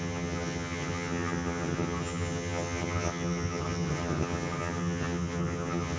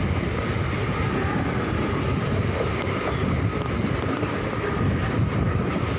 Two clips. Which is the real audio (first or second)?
second